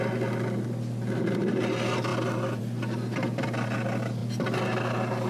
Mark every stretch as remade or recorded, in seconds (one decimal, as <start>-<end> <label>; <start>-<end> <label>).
0.0-5.3 recorded